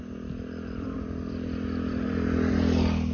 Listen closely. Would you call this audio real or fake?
real